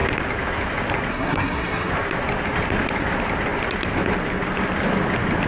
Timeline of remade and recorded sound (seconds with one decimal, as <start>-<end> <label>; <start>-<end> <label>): 0.0-1.1 recorded; 1.1-1.9 remade; 1.9-5.5 recorded